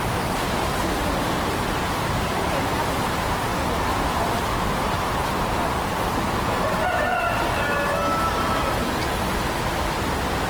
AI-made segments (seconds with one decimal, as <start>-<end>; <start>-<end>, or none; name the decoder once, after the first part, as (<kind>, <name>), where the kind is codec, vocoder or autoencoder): none